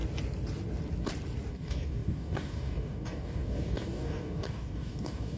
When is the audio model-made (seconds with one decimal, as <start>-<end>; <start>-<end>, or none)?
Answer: 1.5-5.4